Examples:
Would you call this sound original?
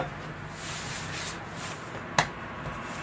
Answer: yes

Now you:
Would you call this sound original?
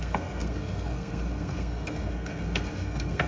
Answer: no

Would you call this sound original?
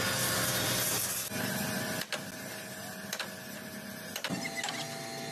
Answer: yes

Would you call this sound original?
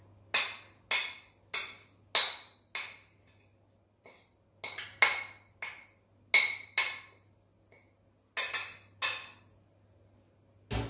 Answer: yes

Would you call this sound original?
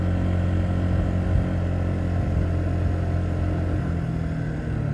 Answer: yes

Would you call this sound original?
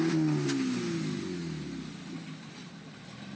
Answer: yes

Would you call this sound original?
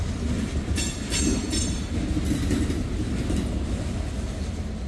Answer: yes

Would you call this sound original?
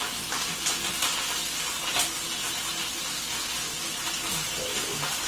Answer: yes